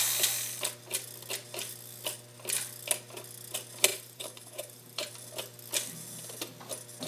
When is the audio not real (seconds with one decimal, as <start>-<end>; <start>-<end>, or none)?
3.9-5.1